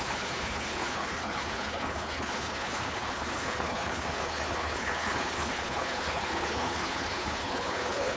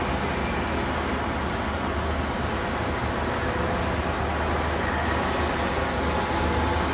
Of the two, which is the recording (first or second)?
second